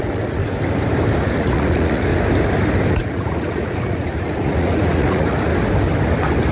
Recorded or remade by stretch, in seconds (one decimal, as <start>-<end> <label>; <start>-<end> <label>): 0.0-0.4 remade; 0.4-1.2 recorded; 1.2-2.1 remade; 2.1-2.9 recorded; 2.9-5.5 remade; 5.5-6.5 recorded